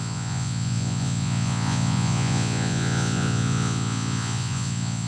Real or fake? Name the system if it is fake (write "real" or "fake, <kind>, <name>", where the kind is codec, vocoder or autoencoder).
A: fake, vocoder, Vocos